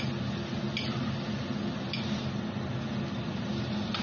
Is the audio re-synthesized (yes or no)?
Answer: no